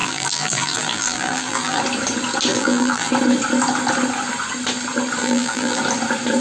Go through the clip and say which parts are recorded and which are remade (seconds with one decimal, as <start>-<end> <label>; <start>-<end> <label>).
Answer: 0.0-1.8 remade; 1.8-2.5 recorded; 2.5-3.1 remade; 3.1-5.2 recorded; 5.2-5.8 remade; 5.8-6.4 recorded